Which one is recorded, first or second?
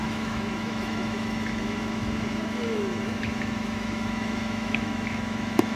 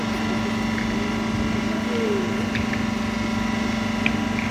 second